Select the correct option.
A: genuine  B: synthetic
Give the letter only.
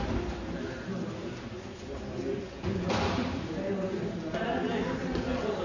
A